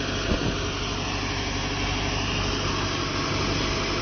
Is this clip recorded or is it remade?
recorded